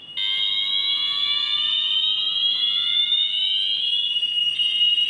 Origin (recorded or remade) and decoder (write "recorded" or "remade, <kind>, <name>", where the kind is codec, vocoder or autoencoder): recorded